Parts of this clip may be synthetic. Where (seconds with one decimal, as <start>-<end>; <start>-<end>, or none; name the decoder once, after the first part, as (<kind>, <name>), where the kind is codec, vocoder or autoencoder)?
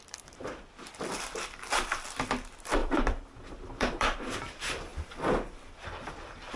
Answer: 0.0-0.6 (vocoder, BigVGAN v2); 2.8-4.2